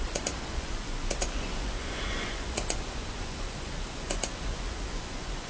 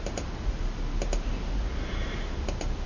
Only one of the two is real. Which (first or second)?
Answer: second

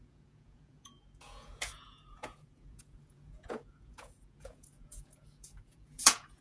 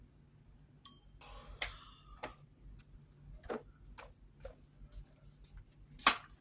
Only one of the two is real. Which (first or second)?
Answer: second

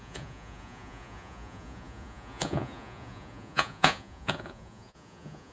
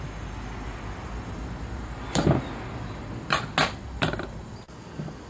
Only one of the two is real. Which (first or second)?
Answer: second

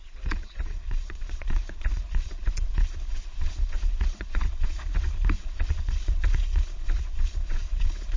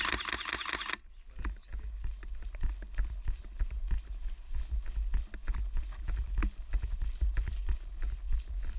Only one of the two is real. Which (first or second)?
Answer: second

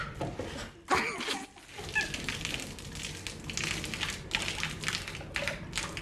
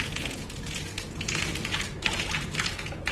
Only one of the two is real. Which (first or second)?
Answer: first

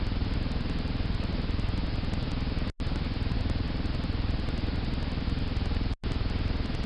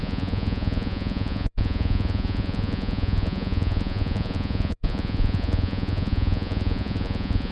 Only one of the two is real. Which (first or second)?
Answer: first